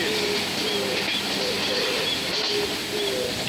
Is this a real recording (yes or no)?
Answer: yes